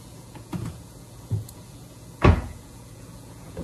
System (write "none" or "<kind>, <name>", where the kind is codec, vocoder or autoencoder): vocoder, Vocos